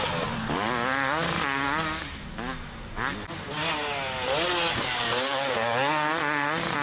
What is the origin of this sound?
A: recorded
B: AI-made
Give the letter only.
A